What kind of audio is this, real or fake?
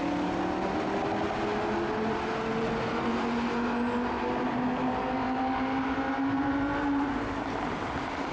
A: real